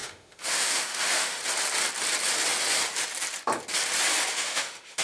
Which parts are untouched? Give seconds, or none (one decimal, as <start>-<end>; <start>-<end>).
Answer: 1.4-4.3